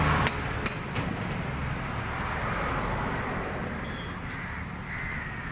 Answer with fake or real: real